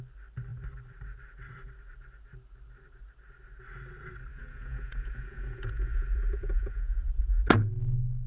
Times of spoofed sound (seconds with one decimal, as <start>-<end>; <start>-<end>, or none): 4.3-7.2